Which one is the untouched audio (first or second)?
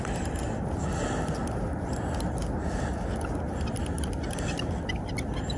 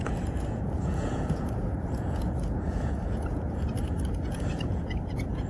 first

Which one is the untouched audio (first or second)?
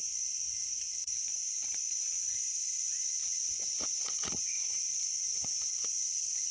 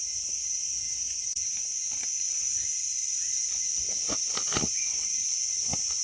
second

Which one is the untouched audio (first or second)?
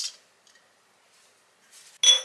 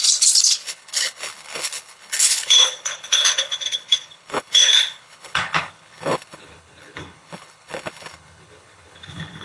first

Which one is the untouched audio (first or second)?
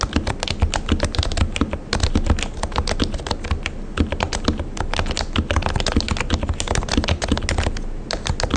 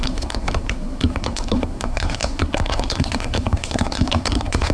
first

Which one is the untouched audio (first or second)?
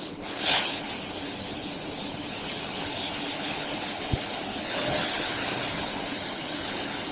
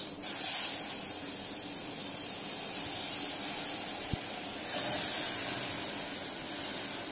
second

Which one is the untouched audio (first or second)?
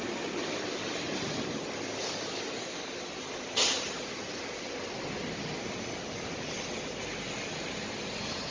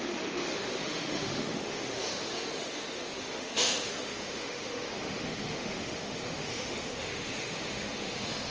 first